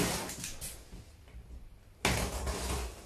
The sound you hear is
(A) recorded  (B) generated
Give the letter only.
A